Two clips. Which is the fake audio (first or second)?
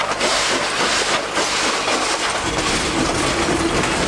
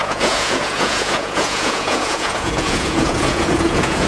second